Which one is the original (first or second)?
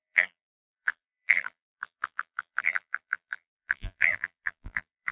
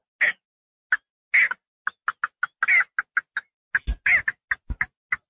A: second